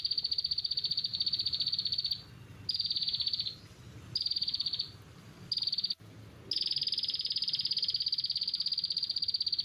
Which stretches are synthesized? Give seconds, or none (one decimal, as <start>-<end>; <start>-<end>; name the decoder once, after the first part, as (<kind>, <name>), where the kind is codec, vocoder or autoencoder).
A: 1.1-1.8 (vocoder, BigVGAN v2); 7.4-8.5